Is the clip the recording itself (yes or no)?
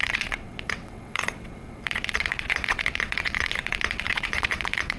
no